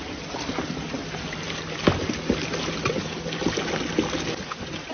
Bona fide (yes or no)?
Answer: yes